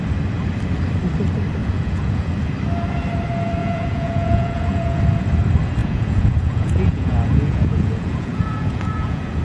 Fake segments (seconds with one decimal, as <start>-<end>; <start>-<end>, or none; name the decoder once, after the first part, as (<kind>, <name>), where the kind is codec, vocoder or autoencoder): 1.6-2.3 (vocoder, Vocos); 3.6-5.0; 5.8-9.4